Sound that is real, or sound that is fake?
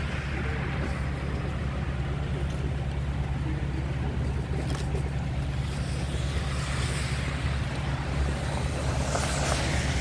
real